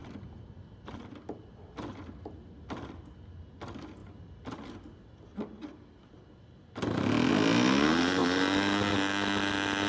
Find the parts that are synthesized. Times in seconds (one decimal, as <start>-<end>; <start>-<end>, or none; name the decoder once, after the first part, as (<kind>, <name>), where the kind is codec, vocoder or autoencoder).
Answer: 0.0-1.9 (vocoder, BigVGAN v2)

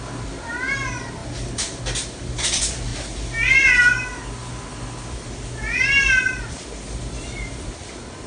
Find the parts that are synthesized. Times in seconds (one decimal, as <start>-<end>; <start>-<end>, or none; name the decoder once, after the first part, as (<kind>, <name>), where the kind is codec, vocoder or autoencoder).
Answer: none

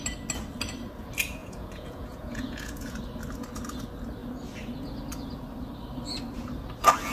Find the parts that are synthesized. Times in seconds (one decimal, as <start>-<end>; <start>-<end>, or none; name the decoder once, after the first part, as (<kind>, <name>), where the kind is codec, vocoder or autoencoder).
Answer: 1.4-3.0 (vocoder, Vocos)

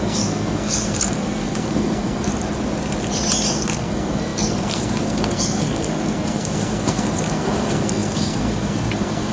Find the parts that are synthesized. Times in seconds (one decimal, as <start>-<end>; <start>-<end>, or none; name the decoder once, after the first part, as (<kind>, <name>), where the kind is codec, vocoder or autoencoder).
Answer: 0.0-2.3 (codec, SNAC); 3.5-9.3